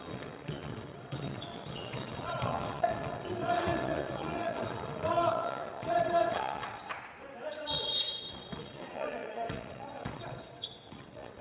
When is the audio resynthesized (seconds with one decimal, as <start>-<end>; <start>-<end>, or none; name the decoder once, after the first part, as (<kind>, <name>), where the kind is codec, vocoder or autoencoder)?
0.0-6.9 (vocoder, WaveNeXt); 7.5-11.4